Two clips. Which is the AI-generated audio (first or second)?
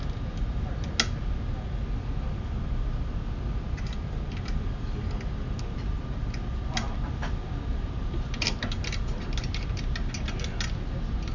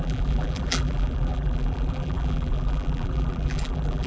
second